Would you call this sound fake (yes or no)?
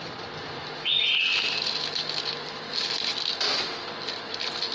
no